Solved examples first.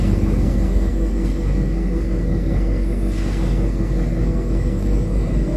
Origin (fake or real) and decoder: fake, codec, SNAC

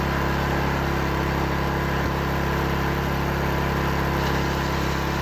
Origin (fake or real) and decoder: real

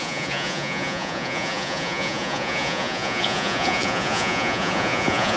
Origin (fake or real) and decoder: fake, vocoder, Vocos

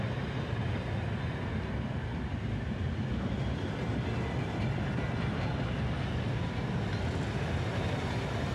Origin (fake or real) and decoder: real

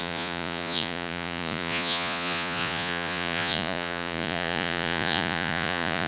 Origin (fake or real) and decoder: fake, vocoder, Vocos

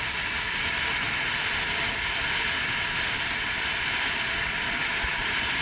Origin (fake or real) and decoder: real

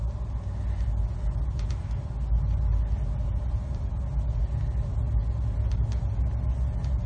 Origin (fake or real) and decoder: real